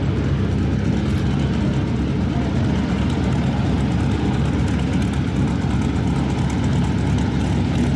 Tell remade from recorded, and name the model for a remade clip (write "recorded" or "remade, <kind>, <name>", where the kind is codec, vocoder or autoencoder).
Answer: recorded